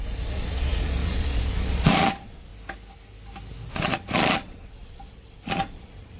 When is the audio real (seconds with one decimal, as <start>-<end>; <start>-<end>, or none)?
2.5-3.7